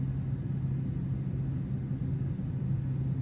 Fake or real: real